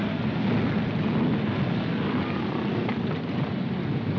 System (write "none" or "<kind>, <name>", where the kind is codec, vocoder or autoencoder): none